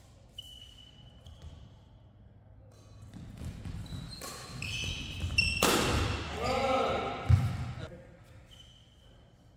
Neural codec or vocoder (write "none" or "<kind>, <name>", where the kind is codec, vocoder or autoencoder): none